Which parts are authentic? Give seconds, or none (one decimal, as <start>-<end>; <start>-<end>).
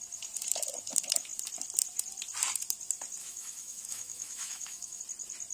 0.0-3.2; 5.0-5.5